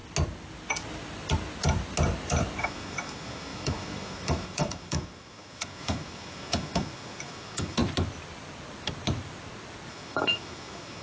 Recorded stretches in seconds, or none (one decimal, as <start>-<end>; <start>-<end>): 0.0-2.6; 7.8-9.9